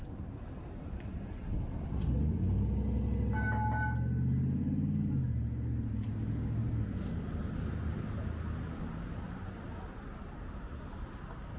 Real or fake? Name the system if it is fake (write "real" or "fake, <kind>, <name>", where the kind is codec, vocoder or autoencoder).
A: real